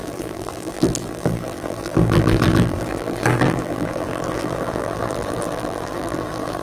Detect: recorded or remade remade